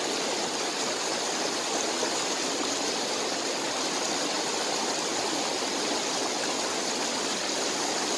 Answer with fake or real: real